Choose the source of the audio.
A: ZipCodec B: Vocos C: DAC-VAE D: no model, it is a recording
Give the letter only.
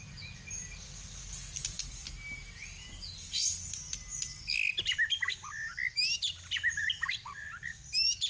D